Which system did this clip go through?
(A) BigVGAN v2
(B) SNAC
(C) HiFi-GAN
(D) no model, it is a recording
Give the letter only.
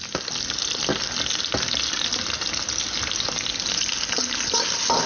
D